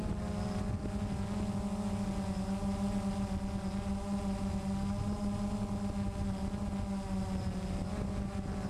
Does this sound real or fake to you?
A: real